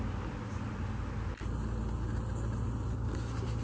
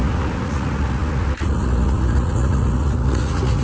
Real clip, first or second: first